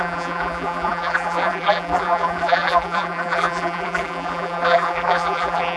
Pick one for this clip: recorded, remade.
remade